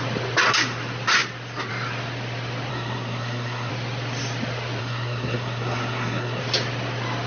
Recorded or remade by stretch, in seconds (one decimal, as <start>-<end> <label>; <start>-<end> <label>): 0.0-2.7 recorded; 2.7-3.7 remade; 3.7-4.8 recorded; 4.8-6.4 remade; 6.4-7.3 recorded